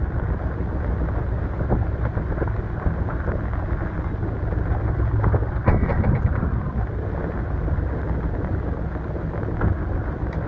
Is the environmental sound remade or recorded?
recorded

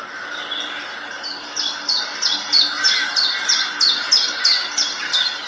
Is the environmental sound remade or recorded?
recorded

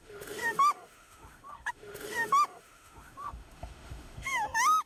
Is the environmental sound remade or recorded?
remade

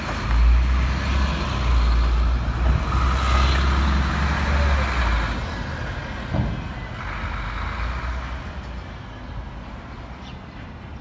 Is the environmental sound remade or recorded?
recorded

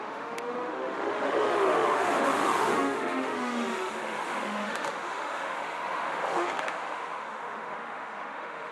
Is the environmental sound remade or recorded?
remade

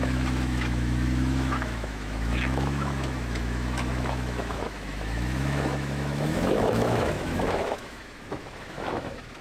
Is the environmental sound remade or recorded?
remade